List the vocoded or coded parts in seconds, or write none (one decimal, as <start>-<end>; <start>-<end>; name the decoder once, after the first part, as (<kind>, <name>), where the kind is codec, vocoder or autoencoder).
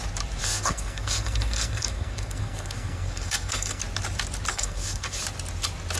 0.4-3.8 (codec, SNAC); 4.5-5.2